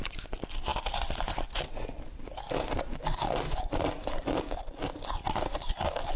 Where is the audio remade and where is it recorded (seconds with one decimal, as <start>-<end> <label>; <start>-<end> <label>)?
0.0-6.2 recorded